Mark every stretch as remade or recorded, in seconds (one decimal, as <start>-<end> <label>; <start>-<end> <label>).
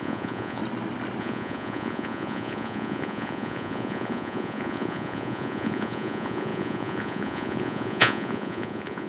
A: 0.0-0.6 remade; 0.6-1.2 recorded; 1.2-9.1 remade